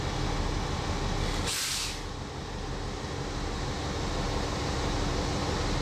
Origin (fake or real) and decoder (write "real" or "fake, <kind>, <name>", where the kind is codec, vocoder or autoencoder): real